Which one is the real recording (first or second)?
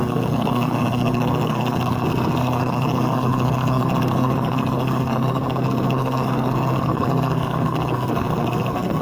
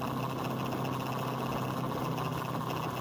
second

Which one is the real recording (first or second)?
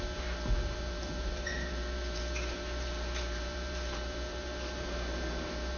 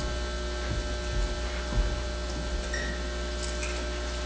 second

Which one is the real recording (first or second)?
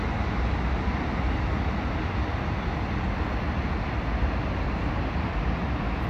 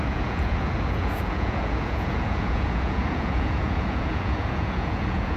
first